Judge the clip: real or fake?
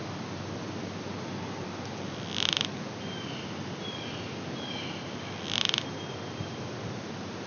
real